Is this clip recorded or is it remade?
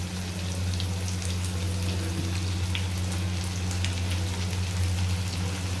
recorded